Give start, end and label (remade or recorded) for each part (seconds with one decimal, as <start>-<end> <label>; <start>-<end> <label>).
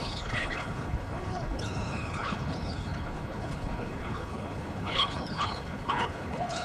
0.0-6.6 remade